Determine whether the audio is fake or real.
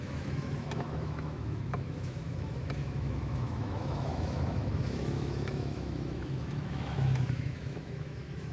fake